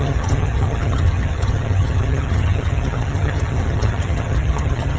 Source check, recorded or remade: remade